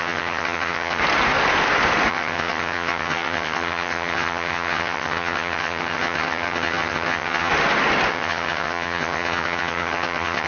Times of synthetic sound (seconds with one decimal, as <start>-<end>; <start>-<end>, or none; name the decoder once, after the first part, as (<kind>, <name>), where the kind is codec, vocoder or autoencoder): 0.0-1.0 (vocoder, HiFi-GAN); 2.1-7.5; 8.1-10.5